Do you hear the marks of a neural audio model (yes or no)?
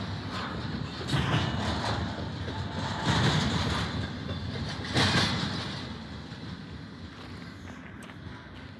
no